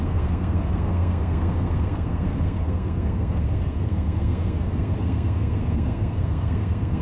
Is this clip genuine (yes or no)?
no